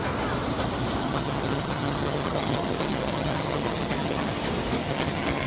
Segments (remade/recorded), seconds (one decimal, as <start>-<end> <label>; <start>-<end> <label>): 0.0-1.0 recorded; 1.0-4.3 remade; 4.3-4.8 recorded; 4.8-5.5 remade